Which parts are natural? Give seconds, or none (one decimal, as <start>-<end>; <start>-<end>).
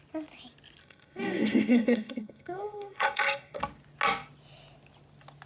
0.0-0.8; 3.6-5.5